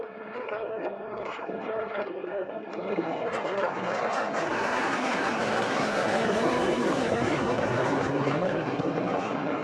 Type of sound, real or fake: fake